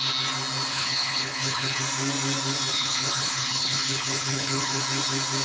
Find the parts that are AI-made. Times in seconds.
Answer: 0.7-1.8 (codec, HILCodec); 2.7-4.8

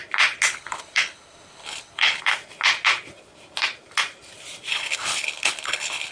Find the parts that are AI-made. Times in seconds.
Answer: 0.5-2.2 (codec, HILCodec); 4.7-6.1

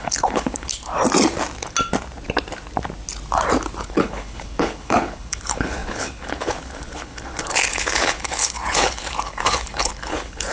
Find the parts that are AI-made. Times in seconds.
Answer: 0.0-0.9 (codec, HILCodec); 3.8-10.5

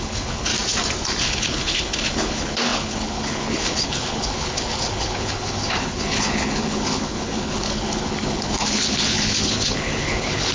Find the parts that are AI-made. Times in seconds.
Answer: 0.0-0.5 (codec, HILCodec); 1.2-10.5

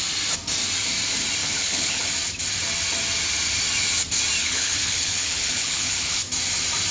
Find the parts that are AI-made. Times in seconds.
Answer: 1.4-2.1 (codec, HILCodec); 4.4-6.2

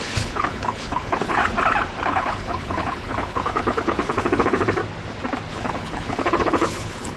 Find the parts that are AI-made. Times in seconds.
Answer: 0.0-1.4 (codec, HILCodec); 2.0-4.8; 5.5-7.2